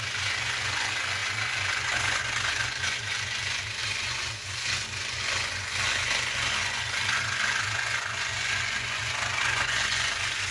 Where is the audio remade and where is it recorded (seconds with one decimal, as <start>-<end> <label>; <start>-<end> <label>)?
0.0-10.5 remade